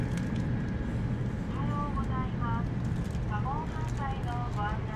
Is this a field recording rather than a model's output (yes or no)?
yes